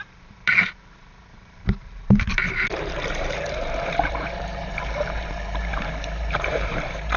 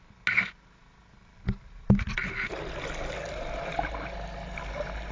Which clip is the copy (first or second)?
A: first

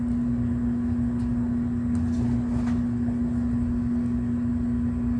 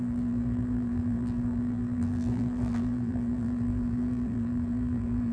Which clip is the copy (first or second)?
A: second